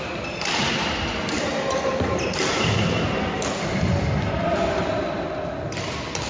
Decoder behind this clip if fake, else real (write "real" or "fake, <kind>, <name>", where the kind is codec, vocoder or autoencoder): real